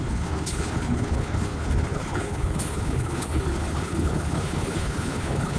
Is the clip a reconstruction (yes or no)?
yes